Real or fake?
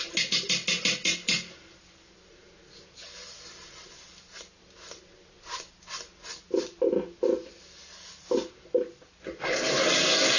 real